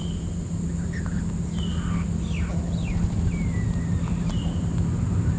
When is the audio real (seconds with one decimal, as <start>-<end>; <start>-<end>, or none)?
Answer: 0.0-5.4